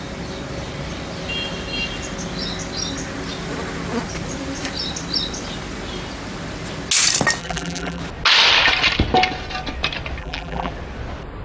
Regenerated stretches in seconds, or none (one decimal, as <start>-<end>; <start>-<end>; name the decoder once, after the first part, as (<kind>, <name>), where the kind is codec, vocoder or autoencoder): 7.4-8.0 (vocoder, BigVGAN v2); 10.2-10.7